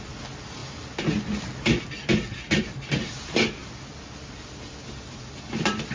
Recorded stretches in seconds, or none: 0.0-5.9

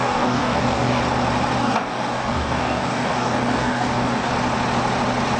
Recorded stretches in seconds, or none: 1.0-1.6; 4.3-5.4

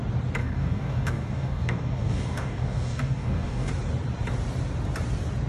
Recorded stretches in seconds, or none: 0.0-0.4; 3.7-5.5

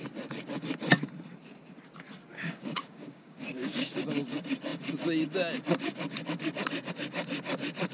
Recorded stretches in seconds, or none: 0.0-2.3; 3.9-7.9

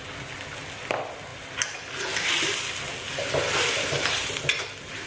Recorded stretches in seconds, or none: 0.0-5.1

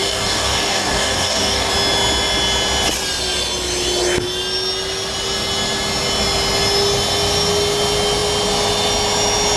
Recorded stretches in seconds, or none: 1.7-9.6